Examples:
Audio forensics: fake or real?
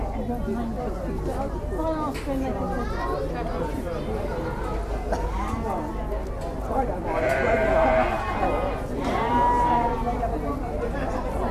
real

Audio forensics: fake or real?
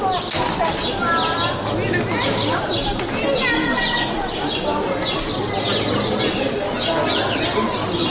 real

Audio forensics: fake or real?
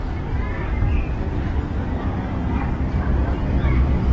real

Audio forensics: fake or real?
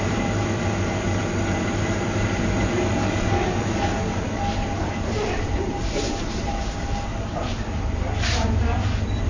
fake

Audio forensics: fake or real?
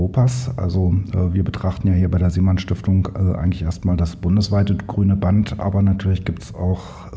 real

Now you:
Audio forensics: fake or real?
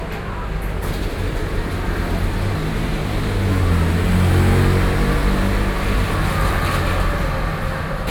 real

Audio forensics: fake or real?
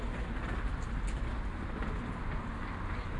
real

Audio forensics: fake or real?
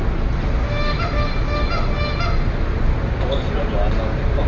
real